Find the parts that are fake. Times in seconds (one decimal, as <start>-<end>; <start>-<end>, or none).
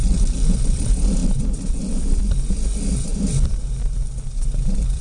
0.6-1.2; 1.7-5.0